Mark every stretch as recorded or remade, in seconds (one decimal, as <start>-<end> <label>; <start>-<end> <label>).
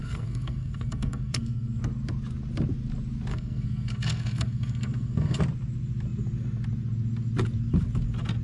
0.0-1.8 remade; 1.8-3.3 recorded; 3.3-5.4 remade; 5.4-8.4 recorded